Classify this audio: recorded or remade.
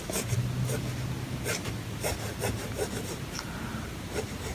recorded